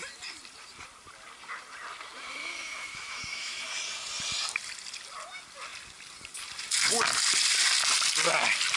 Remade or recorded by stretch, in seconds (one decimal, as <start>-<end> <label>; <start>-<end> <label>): 0.0-2.4 recorded; 2.4-3.7 remade; 3.7-8.8 recorded

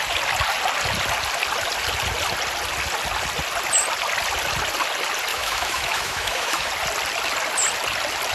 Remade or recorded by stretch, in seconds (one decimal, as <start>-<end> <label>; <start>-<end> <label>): 0.0-5.3 recorded; 5.3-6.7 remade; 6.7-8.3 recorded

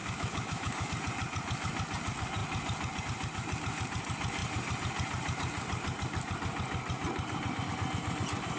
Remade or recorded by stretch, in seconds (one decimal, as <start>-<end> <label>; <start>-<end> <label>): 0.0-0.9 remade; 0.9-8.6 recorded

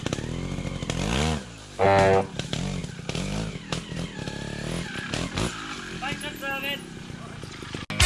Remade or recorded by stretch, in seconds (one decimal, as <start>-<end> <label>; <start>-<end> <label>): 0.0-8.1 recorded